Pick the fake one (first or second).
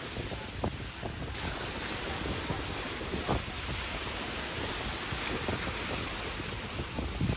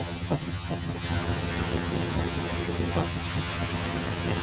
second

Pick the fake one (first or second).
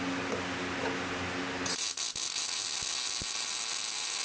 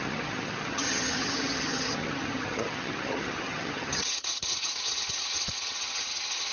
second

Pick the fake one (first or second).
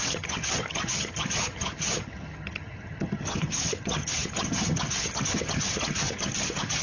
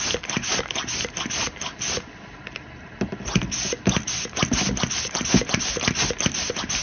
first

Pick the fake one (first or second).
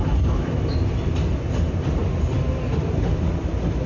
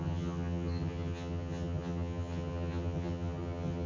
second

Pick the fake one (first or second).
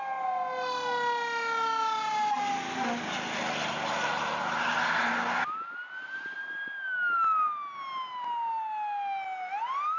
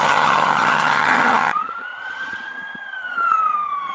second